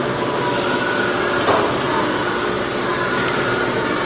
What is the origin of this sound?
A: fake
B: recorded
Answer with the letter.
B